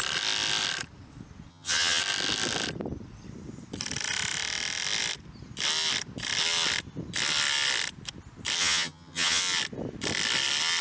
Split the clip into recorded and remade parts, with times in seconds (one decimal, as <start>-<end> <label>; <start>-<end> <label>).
0.0-1.5 recorded; 1.5-2.0 remade; 2.0-8.6 recorded; 8.6-9.4 remade; 9.4-10.8 recorded